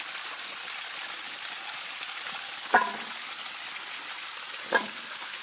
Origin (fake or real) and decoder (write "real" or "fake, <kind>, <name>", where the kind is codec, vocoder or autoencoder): real